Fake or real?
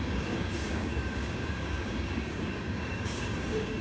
fake